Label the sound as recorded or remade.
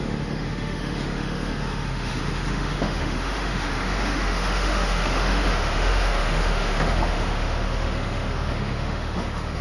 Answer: remade